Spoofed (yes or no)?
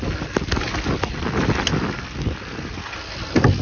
no